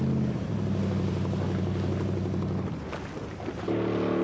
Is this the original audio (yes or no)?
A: yes